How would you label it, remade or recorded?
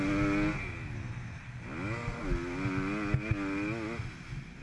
recorded